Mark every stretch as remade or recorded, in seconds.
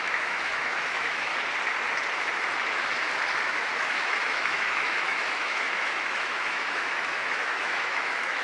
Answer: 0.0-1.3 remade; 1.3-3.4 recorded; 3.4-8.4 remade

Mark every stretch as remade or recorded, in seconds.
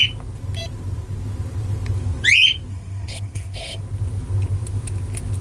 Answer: 0.0-2.7 recorded; 2.7-3.8 remade; 3.8-5.4 recorded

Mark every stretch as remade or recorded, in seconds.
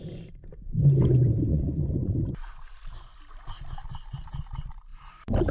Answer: 0.0-1.5 recorded; 1.5-2.1 remade; 2.1-5.5 recorded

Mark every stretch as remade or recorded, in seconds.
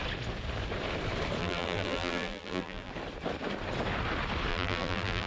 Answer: 0.0-1.4 recorded; 1.4-2.9 remade; 2.9-4.5 recorded; 4.5-5.3 remade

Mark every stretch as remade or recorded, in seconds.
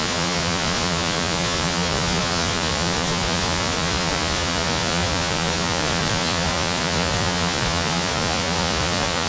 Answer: 0.0-9.3 remade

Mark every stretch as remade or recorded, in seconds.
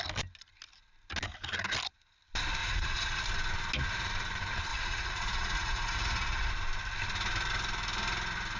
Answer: 0.0-2.6 recorded; 2.6-3.2 remade; 3.2-4.7 recorded; 4.7-6.5 remade; 6.5-8.6 recorded